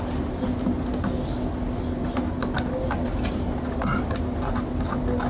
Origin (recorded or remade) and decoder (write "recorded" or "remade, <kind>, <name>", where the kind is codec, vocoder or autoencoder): recorded